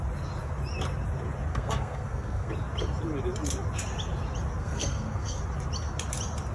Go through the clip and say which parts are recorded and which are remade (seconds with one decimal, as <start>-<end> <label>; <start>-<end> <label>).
0.0-1.5 recorded; 1.5-2.5 remade; 2.5-4.6 recorded; 4.6-5.4 remade; 5.4-6.5 recorded